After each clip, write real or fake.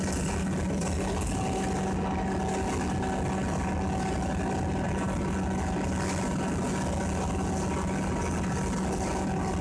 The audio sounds real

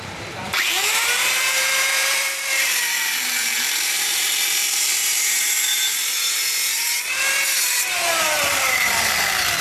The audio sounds fake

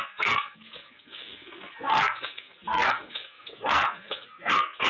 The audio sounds fake